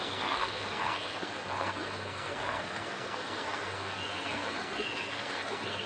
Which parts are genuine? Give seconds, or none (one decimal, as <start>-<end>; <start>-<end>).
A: none